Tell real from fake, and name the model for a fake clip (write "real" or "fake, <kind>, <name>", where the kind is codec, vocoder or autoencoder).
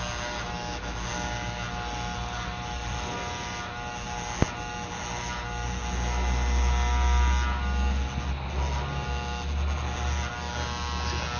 real